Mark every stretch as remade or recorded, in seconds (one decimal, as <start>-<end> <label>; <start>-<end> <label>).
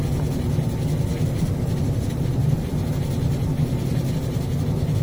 0.0-1.1 recorded; 1.1-4.1 remade; 4.1-5.0 recorded